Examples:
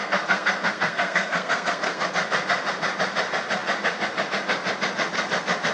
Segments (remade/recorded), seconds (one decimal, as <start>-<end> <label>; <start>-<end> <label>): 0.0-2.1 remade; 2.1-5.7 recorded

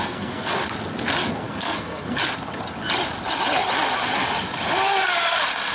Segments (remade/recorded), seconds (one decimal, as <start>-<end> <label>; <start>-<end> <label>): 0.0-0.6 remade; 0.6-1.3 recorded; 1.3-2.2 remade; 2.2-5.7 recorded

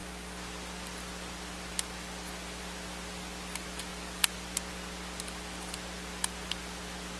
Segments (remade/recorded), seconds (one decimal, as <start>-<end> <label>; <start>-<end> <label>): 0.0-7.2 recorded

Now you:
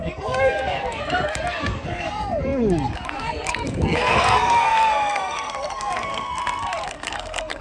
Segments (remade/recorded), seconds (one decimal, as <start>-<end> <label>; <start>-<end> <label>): 0.0-7.6 remade

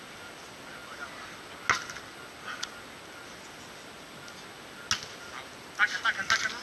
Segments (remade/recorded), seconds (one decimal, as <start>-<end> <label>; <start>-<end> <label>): 0.0-6.6 recorded